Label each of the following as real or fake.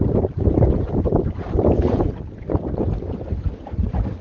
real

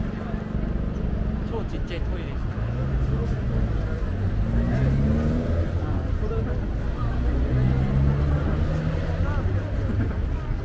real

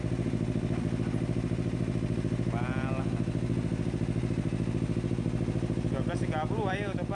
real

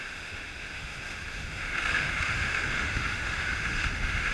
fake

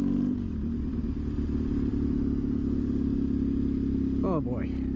real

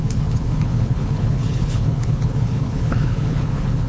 fake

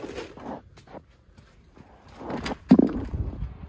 real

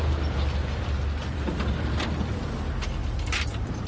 real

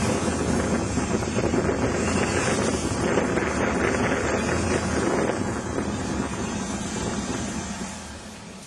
real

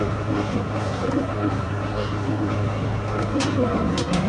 fake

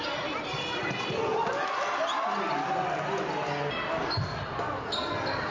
real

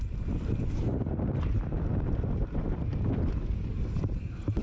real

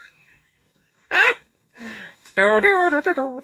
fake